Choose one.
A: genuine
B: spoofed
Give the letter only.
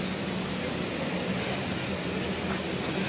A